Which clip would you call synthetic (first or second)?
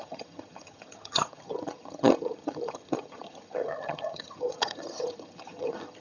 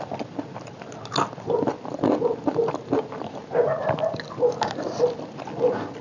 first